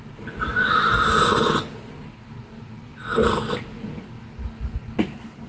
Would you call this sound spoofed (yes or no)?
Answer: no